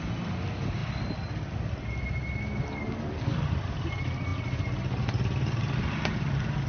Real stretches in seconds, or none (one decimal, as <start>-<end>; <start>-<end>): 0.0-6.7